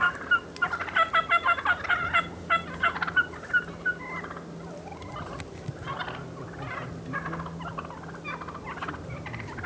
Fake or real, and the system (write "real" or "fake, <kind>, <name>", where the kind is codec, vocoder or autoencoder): real